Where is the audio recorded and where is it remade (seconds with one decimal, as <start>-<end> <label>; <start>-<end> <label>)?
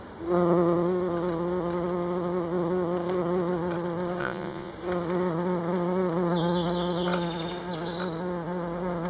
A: 0.0-4.2 recorded; 4.2-4.7 remade; 4.7-9.1 recorded